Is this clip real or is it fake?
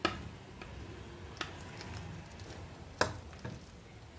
real